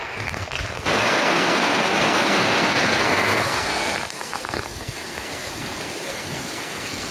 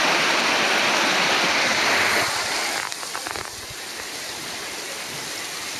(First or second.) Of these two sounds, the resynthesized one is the first